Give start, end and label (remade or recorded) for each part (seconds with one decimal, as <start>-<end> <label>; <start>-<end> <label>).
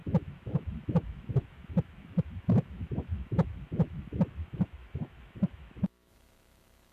0.0-6.9 remade